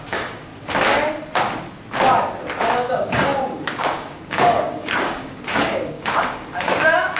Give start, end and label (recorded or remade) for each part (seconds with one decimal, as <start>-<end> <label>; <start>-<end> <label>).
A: 0.0-0.5 remade; 0.5-2.9 recorded; 2.9-7.2 remade